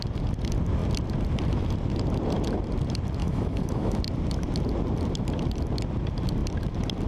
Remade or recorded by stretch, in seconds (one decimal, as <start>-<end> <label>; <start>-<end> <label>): 0.0-3.2 recorded; 3.2-4.0 remade; 4.0-7.1 recorded